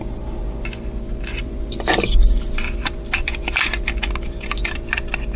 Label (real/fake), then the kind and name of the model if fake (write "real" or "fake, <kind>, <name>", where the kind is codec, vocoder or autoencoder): real